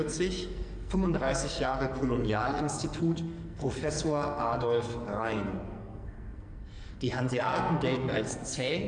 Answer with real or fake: fake